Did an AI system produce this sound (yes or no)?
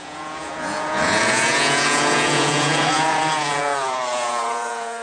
yes